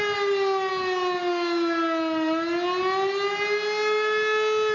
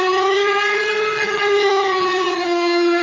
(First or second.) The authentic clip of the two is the first